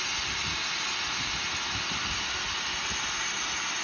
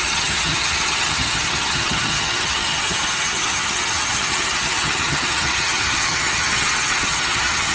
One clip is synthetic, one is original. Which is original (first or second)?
first